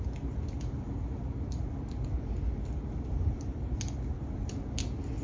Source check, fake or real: real